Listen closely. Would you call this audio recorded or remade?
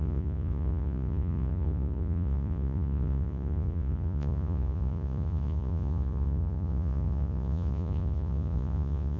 remade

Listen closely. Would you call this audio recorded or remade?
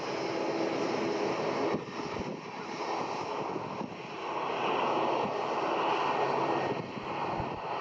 recorded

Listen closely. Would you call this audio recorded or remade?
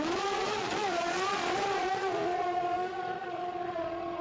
remade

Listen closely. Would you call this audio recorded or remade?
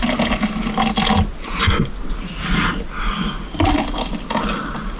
recorded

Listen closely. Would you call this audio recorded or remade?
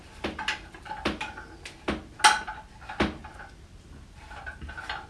recorded